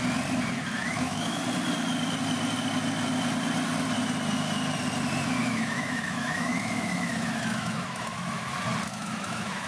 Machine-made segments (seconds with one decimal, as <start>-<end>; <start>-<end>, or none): 0.8-1.4; 5.4-8.4; 8.9-9.7

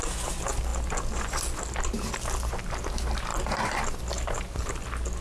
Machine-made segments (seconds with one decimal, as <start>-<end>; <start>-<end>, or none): 3.3-3.8

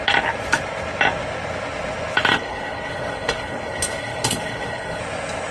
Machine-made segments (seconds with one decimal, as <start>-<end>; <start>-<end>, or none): 2.3-5.0

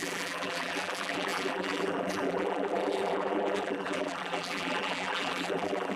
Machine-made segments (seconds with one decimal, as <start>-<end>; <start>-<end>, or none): 0.0-6.0

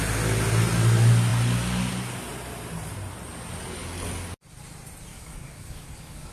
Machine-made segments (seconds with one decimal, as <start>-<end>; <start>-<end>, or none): 5.1-6.3

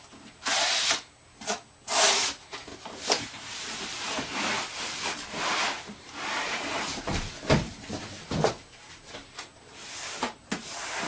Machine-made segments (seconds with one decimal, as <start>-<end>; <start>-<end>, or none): 2.7-7.3; 9.8-11.1

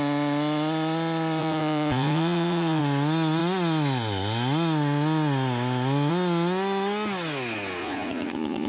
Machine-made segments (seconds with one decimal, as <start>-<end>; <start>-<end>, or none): 1.4-2.8; 7.8-8.7